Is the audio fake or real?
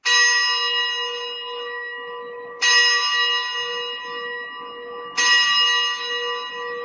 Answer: real